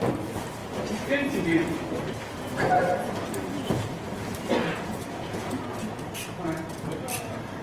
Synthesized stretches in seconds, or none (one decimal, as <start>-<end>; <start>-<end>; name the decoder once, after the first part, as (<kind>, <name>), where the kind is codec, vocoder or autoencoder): 4.6-6.8 (vocoder, Vocos)